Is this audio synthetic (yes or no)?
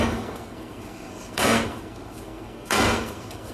yes